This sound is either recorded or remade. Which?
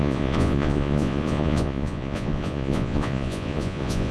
remade